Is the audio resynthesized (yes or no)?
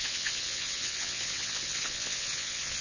yes